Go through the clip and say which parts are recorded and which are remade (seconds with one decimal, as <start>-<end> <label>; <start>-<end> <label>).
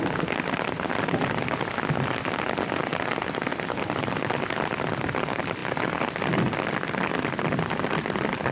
0.0-8.5 recorded